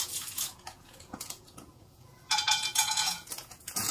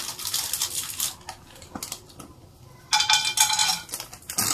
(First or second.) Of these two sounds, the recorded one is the second